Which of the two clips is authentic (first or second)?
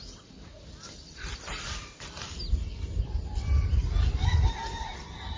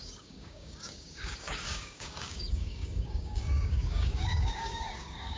first